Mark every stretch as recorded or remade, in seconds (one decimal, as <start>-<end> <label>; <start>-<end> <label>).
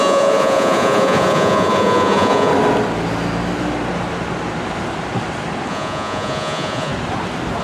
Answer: 0.0-2.5 remade; 2.5-5.7 recorded; 5.7-6.9 remade; 6.9-7.6 recorded